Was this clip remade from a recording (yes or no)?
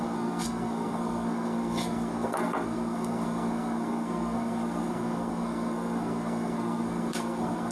yes